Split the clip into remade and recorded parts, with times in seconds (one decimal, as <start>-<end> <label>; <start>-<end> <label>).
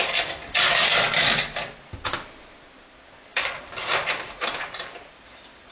0.0-3.3 recorded; 3.3-5.7 remade